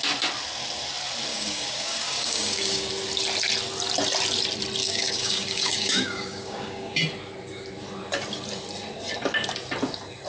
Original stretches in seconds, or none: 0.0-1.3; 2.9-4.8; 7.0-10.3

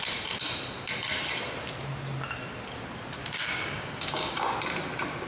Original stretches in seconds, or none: 0.0-3.2; 4.4-5.3

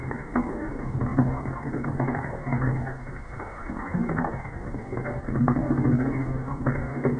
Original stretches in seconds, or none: none

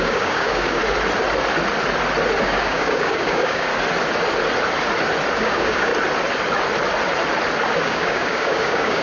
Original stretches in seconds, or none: 0.8-2.4; 3.7-5.3; 5.9-7.8

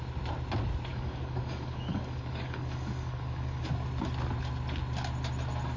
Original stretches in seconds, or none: 0.0-0.9; 3.6-5.8

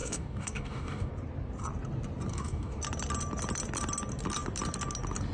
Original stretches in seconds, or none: 1.1-2.3; 2.8-5.3